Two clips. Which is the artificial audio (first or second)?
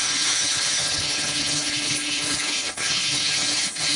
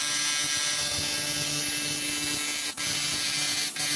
first